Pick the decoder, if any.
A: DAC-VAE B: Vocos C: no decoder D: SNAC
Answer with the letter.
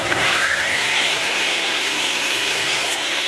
D